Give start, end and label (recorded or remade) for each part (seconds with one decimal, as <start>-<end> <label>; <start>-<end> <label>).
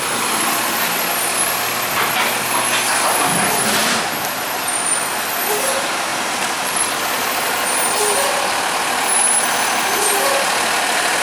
0.0-11.2 recorded